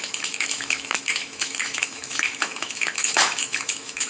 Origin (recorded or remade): remade